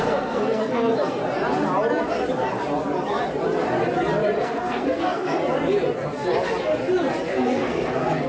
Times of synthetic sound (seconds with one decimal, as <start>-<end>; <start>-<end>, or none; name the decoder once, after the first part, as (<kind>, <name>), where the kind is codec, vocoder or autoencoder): 0.0-1.2 (codec, SNAC); 4.4-5.4; 7.3-8.3